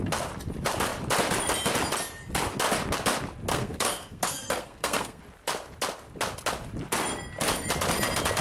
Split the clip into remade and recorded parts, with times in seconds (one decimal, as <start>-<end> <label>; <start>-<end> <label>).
0.0-3.5 recorded; 3.5-5.2 remade; 5.2-8.4 recorded